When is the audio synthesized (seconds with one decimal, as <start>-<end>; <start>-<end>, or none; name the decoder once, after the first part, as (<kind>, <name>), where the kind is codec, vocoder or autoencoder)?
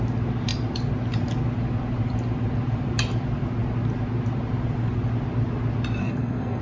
6.0-6.6 (codec, SNAC)